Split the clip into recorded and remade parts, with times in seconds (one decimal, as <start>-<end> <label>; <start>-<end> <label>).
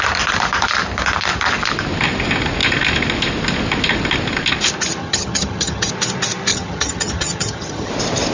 0.0-5.0 recorded; 5.0-5.9 remade; 5.9-6.5 recorded; 6.5-7.9 remade; 7.9-8.3 recorded